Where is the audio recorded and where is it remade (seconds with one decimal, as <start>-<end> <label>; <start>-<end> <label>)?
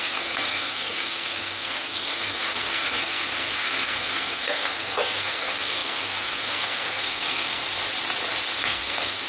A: 0.0-7.6 remade; 7.6-8.6 recorded; 8.6-9.3 remade